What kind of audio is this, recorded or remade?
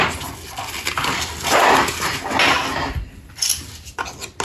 recorded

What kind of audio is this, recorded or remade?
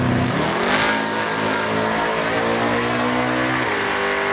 recorded